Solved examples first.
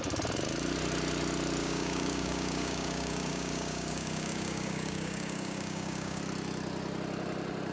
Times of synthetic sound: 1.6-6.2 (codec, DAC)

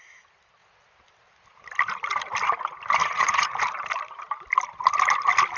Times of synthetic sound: 3.0-3.6 (vocoder, Vocos)

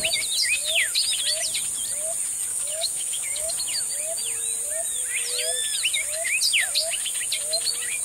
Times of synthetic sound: 2.5-3.5 (codec, DAC)

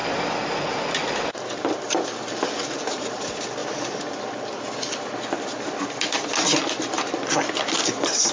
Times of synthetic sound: 1.3-8.3 (vocoder, BigVGAN v2)